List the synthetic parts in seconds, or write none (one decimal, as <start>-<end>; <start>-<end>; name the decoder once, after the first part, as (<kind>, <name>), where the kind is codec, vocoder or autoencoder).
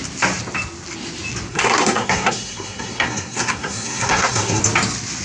1.5-4.6 (codec, SNAC)